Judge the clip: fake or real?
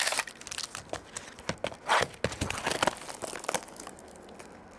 real